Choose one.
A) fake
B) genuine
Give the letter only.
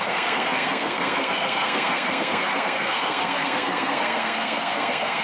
A